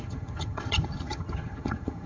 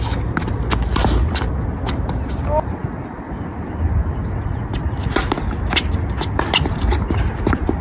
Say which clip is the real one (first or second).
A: second